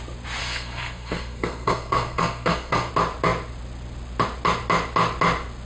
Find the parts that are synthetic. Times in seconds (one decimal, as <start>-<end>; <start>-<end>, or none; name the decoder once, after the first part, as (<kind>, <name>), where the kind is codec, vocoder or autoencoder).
0.4-2.9 (codec, SNAC)